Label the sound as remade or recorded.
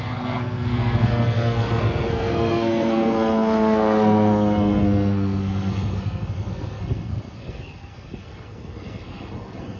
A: remade